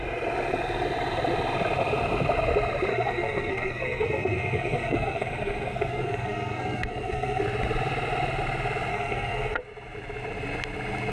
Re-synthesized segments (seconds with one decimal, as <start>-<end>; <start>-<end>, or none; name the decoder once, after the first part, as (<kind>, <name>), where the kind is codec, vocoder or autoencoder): 2.9-7.4 (codec, SNAC); 8.9-9.6